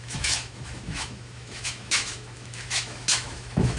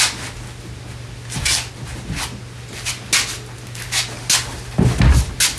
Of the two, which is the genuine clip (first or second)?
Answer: second